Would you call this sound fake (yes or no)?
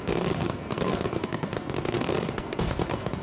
yes